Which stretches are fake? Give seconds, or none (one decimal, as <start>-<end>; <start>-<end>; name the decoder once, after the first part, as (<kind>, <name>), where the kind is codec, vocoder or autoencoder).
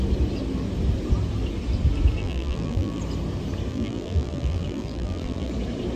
2.2-3.0 (vocoder, BigVGAN v2); 3.7-5.5